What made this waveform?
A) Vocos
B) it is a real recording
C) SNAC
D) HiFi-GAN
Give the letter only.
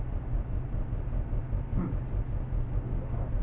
B